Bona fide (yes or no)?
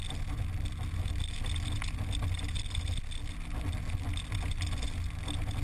yes